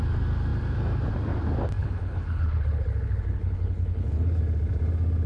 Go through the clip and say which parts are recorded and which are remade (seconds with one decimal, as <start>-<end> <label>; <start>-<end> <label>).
0.0-1.8 recorded; 1.8-4.4 remade; 4.4-5.3 recorded